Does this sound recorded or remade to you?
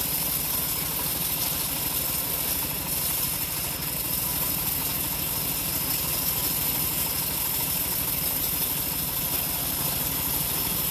recorded